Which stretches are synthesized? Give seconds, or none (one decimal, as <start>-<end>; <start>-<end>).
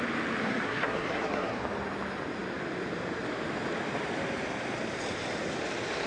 0.4-1.6